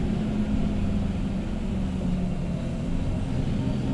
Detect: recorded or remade recorded